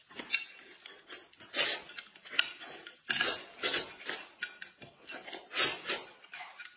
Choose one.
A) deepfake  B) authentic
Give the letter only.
B